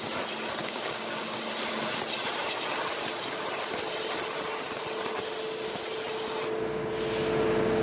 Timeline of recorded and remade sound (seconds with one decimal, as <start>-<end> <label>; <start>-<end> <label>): 0.0-0.6 recorded; 0.6-1.4 remade; 1.4-7.8 recorded